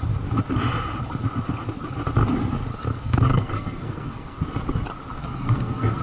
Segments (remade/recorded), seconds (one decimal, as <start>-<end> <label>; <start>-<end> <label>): 0.0-2.9 recorded; 2.9-4.4 remade; 4.4-5.2 recorded; 5.2-6.0 remade